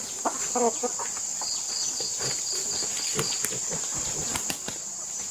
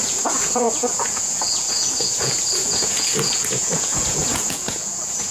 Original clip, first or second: first